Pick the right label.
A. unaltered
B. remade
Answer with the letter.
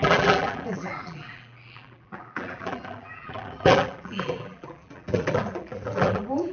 B